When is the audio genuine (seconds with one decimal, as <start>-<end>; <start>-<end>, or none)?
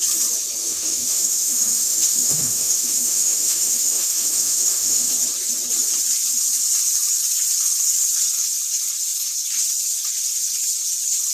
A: 0.0-0.6; 5.1-11.3